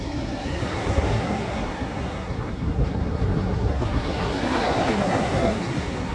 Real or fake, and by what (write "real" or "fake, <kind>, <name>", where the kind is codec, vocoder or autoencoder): fake, codec, SNAC